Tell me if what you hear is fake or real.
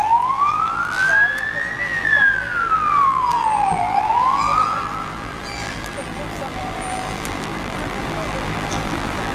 fake